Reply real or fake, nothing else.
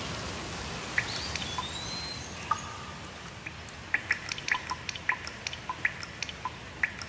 real